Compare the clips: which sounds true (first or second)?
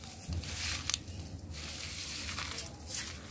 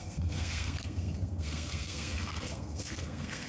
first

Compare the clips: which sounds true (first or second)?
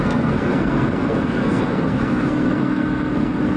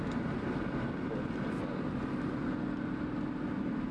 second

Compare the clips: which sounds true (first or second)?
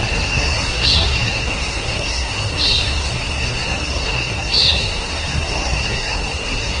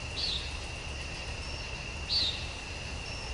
second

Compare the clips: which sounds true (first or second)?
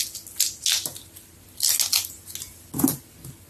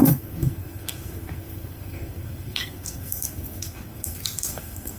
first